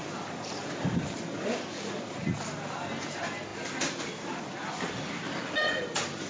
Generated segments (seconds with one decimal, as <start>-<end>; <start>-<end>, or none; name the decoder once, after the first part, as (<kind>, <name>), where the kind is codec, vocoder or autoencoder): none

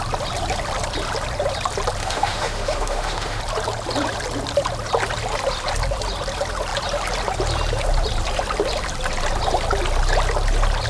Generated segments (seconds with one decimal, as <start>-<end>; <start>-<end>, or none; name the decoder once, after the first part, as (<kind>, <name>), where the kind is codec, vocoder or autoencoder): 2.0-3.4 (autoencoder, DAC-VAE)